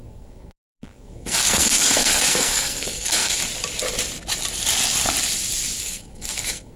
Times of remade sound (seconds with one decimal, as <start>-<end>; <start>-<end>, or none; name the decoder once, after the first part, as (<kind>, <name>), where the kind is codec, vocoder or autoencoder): 0.0-3.4 (codec, SNAC); 5.8-6.8